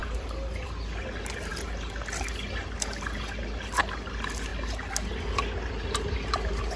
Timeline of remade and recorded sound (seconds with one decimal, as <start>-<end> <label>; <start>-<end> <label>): 0.0-0.7 remade; 0.7-6.8 recorded